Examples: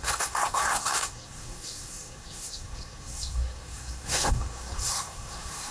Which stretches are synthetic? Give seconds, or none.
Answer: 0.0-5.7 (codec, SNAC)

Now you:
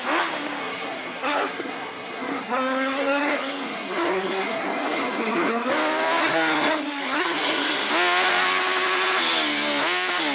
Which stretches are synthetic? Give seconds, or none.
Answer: 0.6-5.7 (codec, SNAC); 6.2-7.9

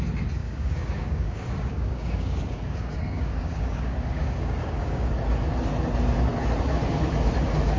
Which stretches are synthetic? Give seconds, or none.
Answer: 0.4-5.1 (codec, DAC)

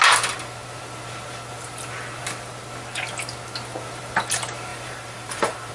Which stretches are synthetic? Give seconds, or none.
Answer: 4.7-5.7 (vocoder, BigVGAN v2)

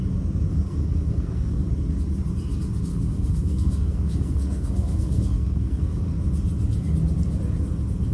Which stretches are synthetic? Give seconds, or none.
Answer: 0.5-1.6 (codec, SNAC); 2.9-6.2